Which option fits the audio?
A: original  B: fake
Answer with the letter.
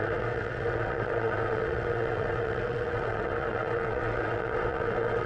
B